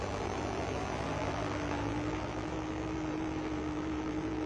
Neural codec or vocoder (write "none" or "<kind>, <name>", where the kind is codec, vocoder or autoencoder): vocoder, BigVGAN v2